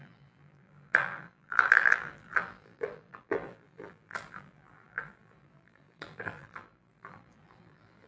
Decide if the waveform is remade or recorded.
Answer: remade